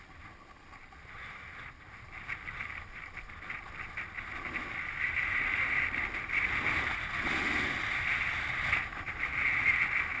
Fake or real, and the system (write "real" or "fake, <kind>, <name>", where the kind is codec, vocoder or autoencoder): real